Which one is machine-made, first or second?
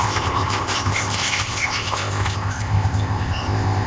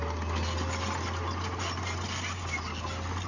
first